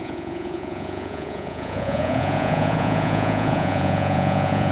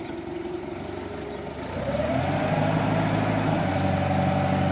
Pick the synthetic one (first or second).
first